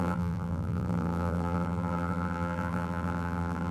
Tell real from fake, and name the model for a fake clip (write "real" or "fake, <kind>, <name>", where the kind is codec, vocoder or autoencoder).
fake, vocoder, BigVGAN v2